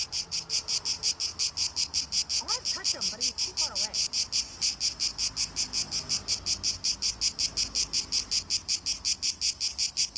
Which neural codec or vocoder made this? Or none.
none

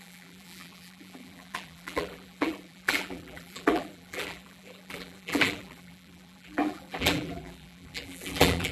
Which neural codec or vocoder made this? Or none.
vocoder, BigVGAN v2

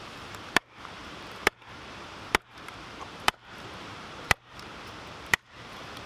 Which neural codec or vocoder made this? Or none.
vocoder, BigVGAN v2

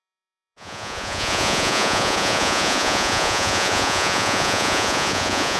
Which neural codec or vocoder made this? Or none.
vocoder, Vocos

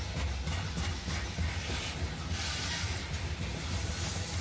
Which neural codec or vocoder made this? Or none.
none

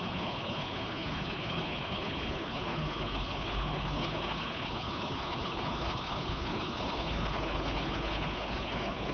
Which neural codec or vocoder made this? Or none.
codec, HILCodec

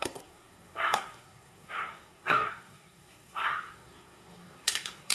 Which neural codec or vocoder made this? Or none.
codec, SNAC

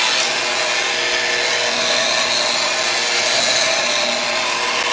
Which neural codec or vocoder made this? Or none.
none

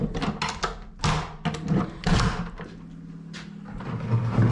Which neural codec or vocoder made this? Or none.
none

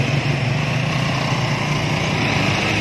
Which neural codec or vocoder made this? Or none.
none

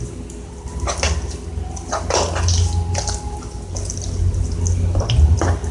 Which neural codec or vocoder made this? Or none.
none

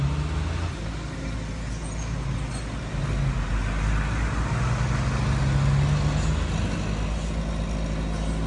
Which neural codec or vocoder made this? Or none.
none